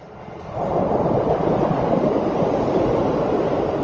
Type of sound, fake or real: real